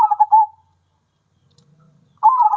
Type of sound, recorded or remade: recorded